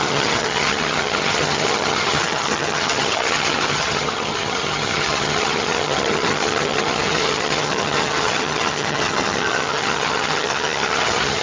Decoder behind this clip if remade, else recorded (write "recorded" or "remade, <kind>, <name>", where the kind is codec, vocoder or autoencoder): remade, vocoder, HiFi-GAN